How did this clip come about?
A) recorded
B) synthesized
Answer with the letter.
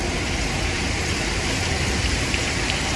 B